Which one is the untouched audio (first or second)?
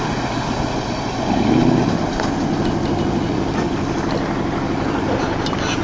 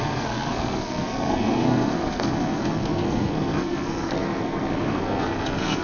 first